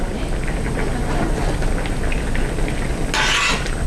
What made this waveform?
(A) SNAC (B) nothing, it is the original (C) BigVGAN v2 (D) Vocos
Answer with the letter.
B